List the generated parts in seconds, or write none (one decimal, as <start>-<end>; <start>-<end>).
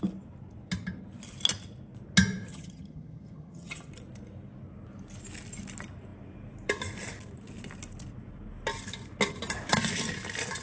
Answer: 2.5-3.9